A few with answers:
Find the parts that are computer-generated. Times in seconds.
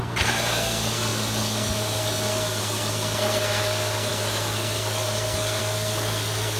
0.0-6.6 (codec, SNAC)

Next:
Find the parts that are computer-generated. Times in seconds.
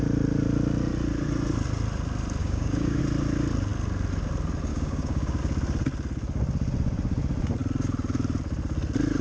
2.4-3.0 (codec, DAC); 4.7-5.4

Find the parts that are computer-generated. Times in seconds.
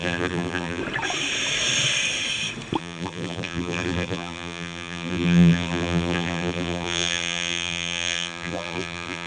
0.0-0.8 (vocoder, BigVGAN v2); 2.8-9.3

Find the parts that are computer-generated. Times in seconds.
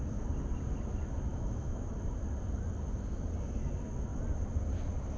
1.3-1.9 (autoencoder, DAC-VAE)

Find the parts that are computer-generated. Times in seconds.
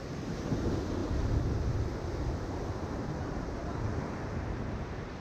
0.0-5.2 (vocoder, BigVGAN v2)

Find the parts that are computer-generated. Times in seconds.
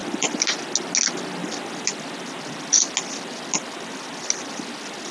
none